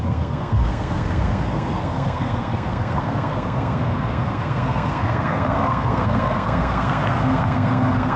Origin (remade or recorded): remade